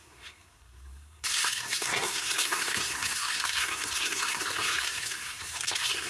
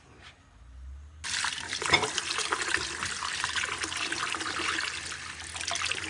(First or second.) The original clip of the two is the second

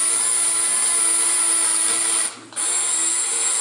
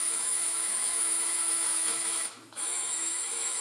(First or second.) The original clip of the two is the first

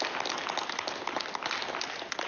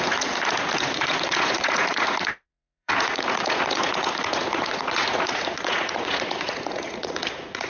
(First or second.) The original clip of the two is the first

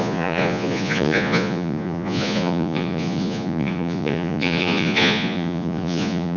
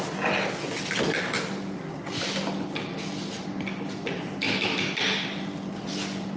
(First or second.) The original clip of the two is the second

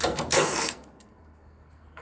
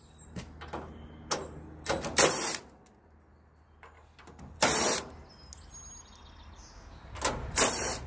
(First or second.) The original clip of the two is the second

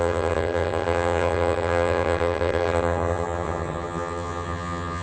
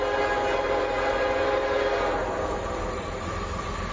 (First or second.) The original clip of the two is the second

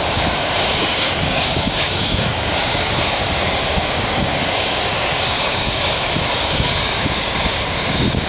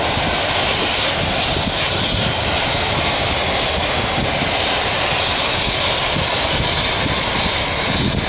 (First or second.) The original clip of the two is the second